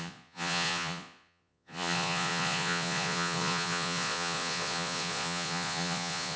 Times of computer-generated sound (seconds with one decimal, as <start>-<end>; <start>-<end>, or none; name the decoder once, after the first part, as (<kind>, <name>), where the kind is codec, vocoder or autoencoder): 0.0-6.4 (vocoder, Vocos)